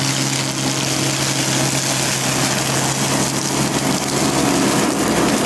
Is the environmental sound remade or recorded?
recorded